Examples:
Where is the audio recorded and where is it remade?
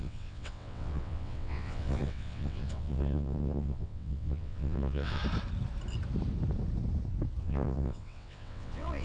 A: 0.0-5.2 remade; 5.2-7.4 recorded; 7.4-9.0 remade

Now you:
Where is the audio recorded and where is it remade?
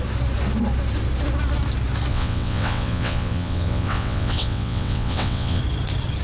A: 0.0-2.1 recorded; 2.1-5.6 remade; 5.6-6.2 recorded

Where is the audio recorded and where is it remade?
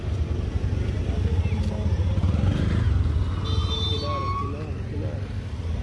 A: 0.0-5.8 recorded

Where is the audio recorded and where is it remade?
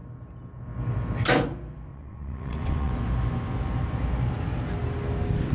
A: 0.0-1.9 recorded; 1.9-2.9 remade; 2.9-5.5 recorded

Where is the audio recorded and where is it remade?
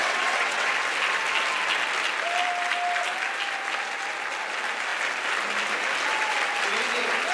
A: 0.0-0.7 remade; 0.7-7.3 recorded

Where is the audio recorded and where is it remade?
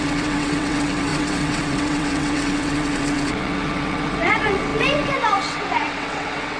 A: 0.0-6.6 remade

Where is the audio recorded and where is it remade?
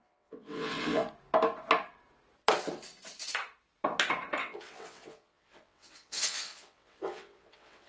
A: 0.0-1.0 remade; 1.0-4.4 recorded; 4.4-7.9 remade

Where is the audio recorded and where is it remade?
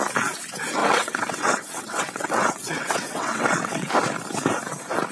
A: 0.0-0.8 recorded; 0.8-3.9 remade; 3.9-5.1 recorded